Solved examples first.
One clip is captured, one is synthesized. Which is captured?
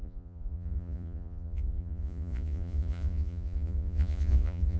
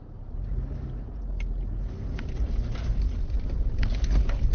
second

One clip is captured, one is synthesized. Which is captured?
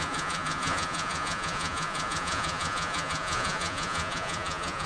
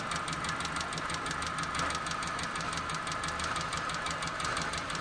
second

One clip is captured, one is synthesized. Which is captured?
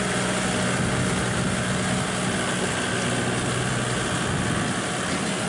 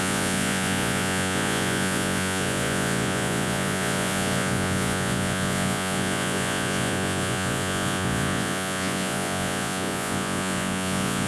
first